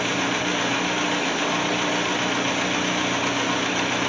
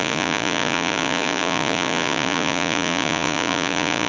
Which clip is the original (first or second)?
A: first